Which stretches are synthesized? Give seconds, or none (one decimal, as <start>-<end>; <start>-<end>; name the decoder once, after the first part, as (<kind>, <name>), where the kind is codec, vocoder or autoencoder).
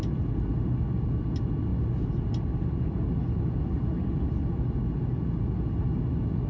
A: none